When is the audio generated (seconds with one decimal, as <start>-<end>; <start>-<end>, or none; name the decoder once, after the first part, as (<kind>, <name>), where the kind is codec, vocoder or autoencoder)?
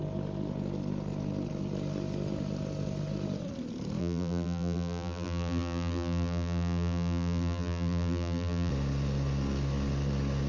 4.0-8.7 (vocoder, BigVGAN v2)